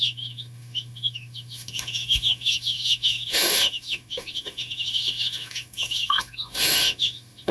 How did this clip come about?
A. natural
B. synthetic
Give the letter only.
B